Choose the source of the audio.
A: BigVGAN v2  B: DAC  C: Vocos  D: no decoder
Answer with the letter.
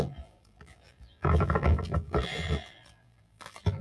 A